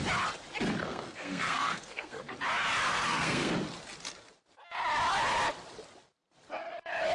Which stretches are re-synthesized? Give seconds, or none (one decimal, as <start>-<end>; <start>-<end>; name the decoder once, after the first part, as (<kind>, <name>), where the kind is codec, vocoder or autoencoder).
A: 0.8-2.3 (codec, SNAC); 2.9-3.5